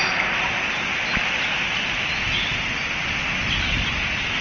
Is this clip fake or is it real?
real